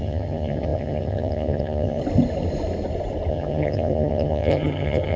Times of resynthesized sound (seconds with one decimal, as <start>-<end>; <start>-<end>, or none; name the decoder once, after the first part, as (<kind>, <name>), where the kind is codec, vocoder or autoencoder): 0.0-2.0 (vocoder, HiFi-GAN); 3.3-5.2